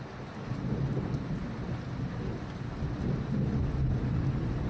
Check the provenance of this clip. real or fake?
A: real